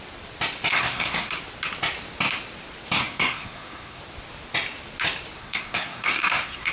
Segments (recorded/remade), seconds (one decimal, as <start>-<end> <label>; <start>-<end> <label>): 0.0-0.7 recorded; 0.7-1.3 remade; 1.3-3.0 recorded; 3.0-4.0 remade; 4.0-5.4 recorded; 5.4-6.7 remade

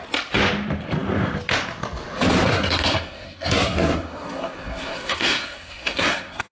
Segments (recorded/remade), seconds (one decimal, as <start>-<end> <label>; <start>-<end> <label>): 0.0-2.5 recorded; 2.5-6.5 remade